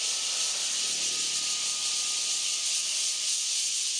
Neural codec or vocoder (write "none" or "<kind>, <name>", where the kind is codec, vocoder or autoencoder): none